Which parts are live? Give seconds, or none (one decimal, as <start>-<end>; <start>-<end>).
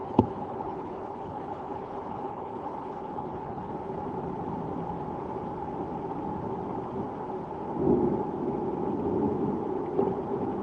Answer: 3.7-10.6